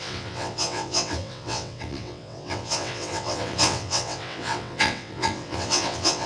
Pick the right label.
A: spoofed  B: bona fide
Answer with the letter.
A